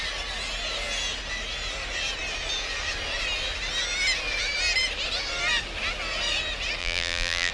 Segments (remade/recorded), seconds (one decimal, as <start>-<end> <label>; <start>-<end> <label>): 0.0-6.8 recorded; 6.8-7.5 remade